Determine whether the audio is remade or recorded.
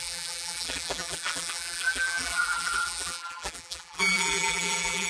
remade